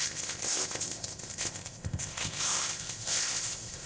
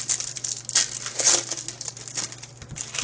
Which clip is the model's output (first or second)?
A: first